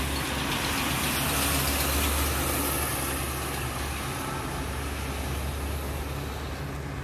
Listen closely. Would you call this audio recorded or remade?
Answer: recorded